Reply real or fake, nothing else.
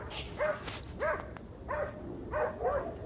real